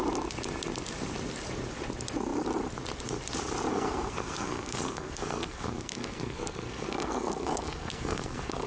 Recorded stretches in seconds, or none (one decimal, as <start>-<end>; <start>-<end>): 0.0-3.7